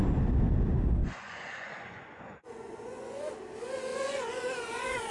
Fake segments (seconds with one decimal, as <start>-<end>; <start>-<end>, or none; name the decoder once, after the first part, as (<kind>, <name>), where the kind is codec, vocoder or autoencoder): 1.0-3.3 (vocoder, Vocos); 3.9-5.1

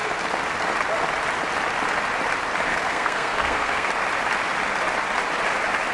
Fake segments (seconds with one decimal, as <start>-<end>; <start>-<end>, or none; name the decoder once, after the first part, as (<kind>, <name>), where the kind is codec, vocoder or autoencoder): 2.7-3.9 (codec, SNAC)

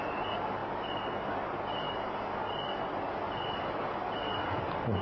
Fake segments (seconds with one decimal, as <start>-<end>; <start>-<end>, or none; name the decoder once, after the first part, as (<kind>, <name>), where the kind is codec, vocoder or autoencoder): none

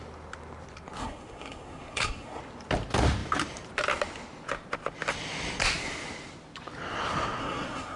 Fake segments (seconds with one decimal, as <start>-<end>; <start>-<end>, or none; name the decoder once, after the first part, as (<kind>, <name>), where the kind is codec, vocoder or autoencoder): 1.0-2.4 (codec, SNAC); 7.4-8.0